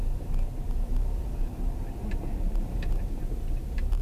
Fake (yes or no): no